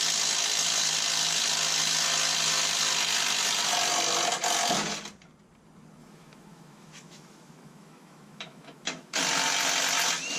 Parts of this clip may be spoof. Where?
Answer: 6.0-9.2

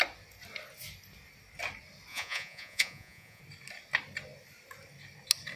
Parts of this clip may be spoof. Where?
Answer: 2.1-3.4

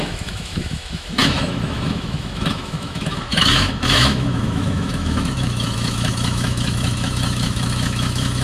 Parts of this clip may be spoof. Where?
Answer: 0.0-8.4